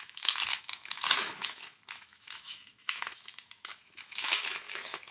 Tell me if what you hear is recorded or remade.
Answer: remade